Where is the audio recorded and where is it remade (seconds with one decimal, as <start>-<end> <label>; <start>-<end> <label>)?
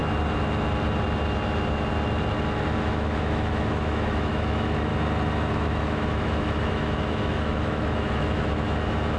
0.0-2.8 recorded; 2.8-4.9 remade; 4.9-5.5 recorded; 5.5-9.2 remade